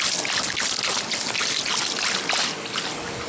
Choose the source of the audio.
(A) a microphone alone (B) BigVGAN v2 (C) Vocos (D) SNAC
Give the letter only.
A